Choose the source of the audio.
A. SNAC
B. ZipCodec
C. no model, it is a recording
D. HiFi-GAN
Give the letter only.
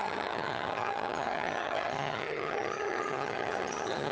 D